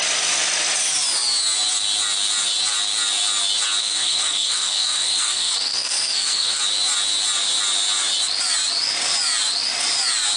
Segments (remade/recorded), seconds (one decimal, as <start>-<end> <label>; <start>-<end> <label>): 0.0-3.8 recorded; 3.8-6.6 remade; 6.6-10.4 recorded